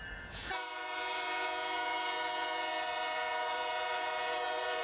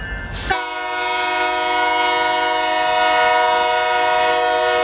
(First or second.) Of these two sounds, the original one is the second